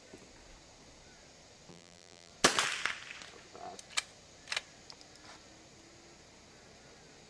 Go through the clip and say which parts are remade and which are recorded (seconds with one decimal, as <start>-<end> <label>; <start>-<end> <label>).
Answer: 0.0-1.7 recorded; 1.7-2.3 remade; 2.3-7.3 recorded